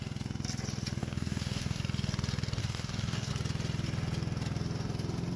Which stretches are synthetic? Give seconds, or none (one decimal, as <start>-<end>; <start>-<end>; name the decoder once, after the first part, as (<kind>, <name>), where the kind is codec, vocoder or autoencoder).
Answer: 1.0-1.8 (codec, DAC); 2.6-3.3